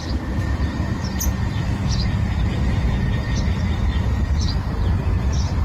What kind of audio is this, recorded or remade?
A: remade